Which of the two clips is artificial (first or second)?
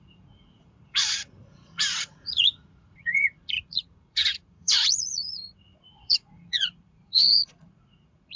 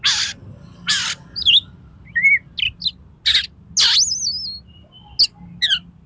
first